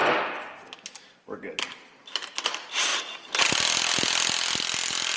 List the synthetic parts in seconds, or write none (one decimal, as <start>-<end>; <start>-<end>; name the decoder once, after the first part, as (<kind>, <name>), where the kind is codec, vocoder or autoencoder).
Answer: none